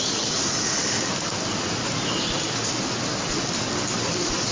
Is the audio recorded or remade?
recorded